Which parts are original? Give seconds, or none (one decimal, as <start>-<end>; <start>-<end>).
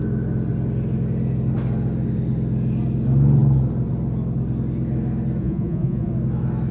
0.0-5.4; 6.1-6.7